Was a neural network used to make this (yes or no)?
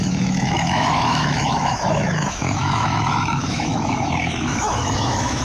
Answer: yes